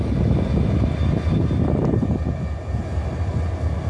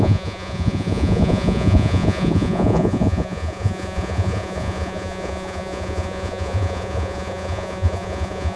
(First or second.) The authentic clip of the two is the first